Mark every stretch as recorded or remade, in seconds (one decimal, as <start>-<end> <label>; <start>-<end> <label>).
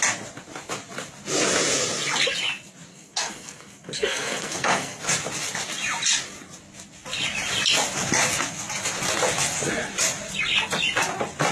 0.0-2.9 recorded; 2.9-5.0 remade; 5.0-11.5 recorded